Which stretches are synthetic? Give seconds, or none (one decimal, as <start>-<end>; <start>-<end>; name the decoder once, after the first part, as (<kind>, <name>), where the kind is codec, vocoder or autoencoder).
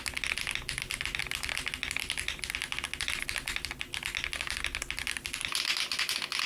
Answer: none